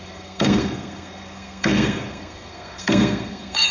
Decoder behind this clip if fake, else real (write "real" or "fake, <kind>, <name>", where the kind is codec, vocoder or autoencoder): fake, codec, SNAC